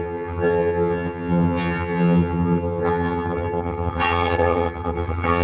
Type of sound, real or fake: fake